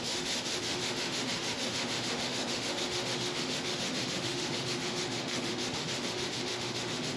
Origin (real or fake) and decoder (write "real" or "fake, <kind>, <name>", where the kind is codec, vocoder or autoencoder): fake, autoencoder, DAC-VAE